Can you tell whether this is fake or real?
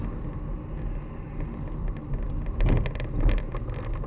real